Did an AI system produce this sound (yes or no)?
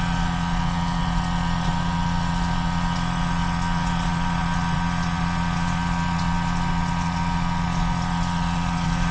yes